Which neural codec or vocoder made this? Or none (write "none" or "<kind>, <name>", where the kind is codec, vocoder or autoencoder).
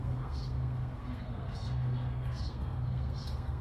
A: codec, SNAC